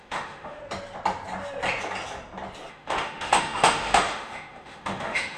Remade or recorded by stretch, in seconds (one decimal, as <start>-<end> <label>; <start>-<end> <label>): 0.0-0.6 remade; 0.6-2.7 recorded; 2.7-5.4 remade